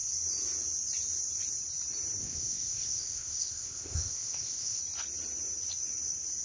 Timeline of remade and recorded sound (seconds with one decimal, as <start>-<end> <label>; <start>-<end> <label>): 0.0-2.2 recorded; 2.2-4.8 remade; 4.8-6.4 recorded